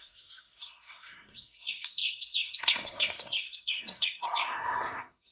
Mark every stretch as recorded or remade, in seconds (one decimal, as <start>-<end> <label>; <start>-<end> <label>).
0.0-5.3 remade